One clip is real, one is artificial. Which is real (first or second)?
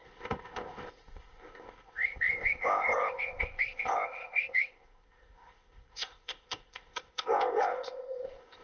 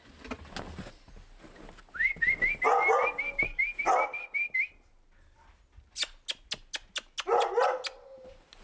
second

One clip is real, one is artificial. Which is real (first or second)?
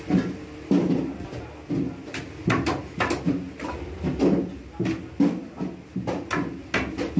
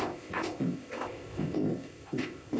first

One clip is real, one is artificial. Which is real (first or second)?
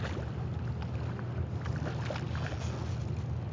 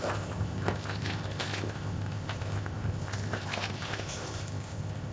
first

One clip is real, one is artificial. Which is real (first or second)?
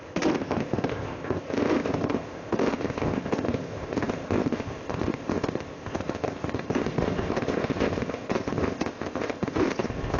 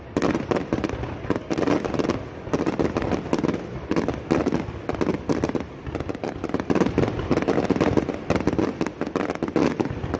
second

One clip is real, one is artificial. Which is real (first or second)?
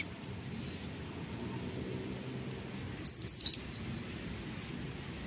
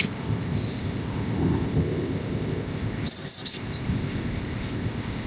first